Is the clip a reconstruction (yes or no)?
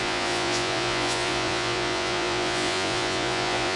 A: yes